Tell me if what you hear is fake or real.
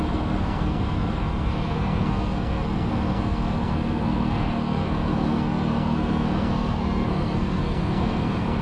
fake